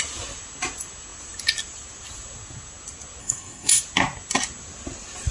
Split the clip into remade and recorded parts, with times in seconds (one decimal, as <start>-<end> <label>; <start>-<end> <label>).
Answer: 0.0-3.2 recorded; 3.2-3.8 remade; 3.8-5.3 recorded